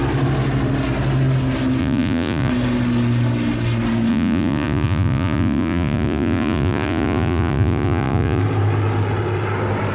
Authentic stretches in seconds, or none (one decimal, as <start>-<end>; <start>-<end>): 0.0-1.8; 2.5-4.1; 8.4-9.9